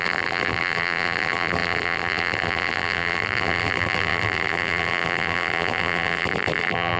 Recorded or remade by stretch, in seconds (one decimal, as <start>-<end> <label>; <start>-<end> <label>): 0.0-7.0 remade